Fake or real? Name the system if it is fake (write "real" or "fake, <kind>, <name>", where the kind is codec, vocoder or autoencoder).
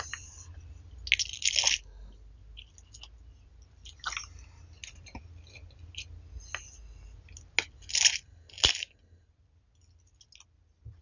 real